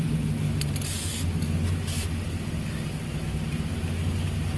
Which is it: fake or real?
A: real